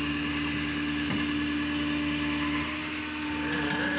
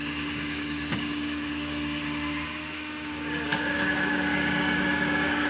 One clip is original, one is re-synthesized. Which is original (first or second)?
first